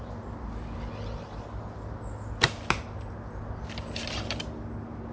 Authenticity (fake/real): real